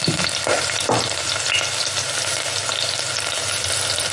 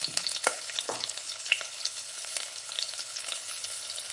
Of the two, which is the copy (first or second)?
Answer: second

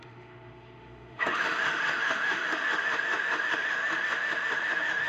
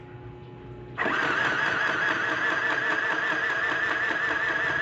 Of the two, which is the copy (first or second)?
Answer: first